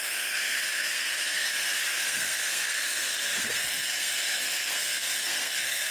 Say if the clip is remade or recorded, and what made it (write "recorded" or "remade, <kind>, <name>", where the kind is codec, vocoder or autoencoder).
remade, codec, SNAC